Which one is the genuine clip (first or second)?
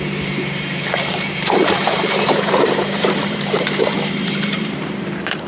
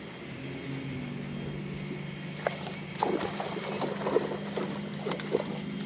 second